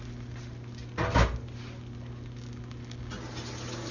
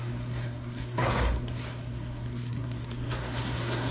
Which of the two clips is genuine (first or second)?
first